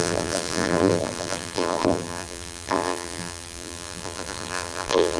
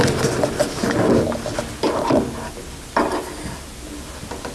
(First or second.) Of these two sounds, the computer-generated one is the first